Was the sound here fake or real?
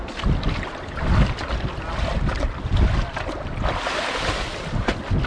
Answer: real